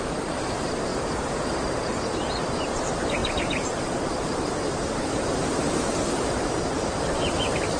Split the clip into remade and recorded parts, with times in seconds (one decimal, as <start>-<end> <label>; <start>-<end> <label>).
0.0-0.9 remade; 0.9-2.4 recorded; 2.4-7.8 remade